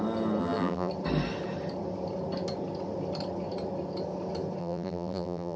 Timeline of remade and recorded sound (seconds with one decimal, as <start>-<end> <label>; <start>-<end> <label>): 0.0-0.4 recorded; 0.4-0.9 remade; 0.9-4.6 recorded; 4.6-5.6 remade